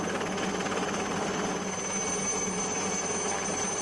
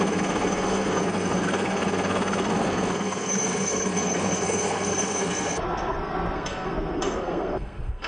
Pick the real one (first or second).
first